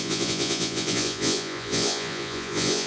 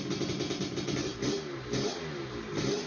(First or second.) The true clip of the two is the second